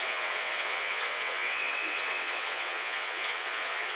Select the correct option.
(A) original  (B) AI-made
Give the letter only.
B